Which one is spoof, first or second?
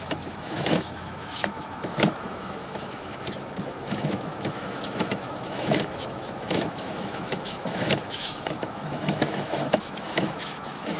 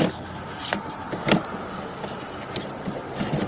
first